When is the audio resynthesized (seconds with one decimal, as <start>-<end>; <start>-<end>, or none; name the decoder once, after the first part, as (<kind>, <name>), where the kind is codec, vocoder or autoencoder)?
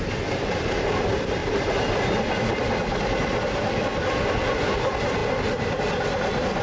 none